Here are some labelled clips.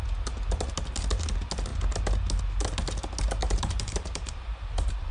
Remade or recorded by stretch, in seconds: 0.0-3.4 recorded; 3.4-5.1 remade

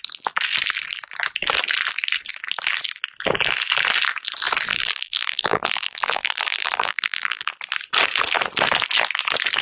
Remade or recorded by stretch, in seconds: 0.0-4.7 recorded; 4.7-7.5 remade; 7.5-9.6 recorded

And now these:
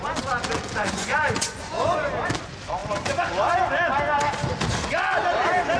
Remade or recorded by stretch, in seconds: 0.0-0.8 recorded; 0.8-2.1 remade; 2.1-5.8 recorded